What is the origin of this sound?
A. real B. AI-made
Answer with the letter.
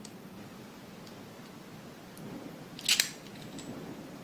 A